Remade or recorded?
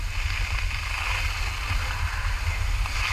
recorded